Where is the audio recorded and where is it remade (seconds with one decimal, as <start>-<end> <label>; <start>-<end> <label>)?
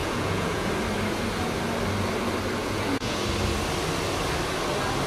0.0-0.7 remade; 0.7-2.6 recorded; 2.6-3.2 remade; 3.2-5.1 recorded